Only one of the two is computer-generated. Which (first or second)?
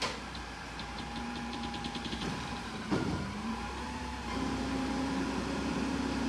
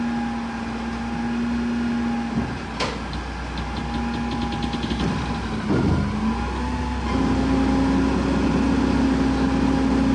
first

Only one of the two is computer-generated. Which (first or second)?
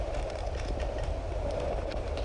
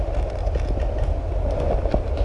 first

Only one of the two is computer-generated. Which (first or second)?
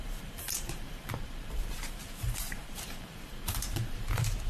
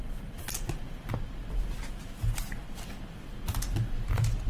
first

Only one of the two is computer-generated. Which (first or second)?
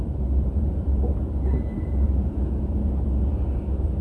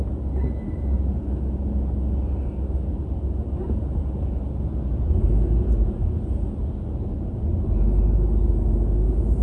first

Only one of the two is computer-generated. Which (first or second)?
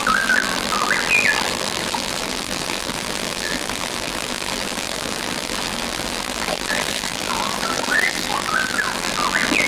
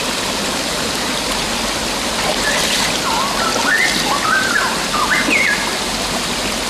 first